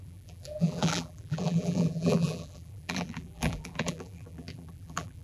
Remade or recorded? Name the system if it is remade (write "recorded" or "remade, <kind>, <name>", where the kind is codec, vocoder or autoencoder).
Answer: remade, vocoder, BigVGAN v2